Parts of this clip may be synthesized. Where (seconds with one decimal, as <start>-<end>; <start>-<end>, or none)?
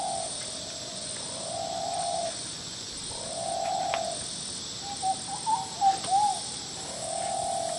0.9-3.7